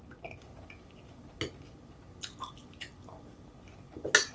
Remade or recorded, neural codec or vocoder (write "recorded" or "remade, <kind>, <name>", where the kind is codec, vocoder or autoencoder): recorded